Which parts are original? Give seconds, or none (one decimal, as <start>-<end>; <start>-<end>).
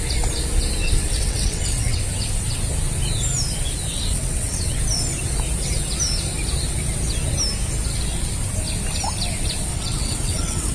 0.0-0.8; 2.0-3.9; 4.8-9.7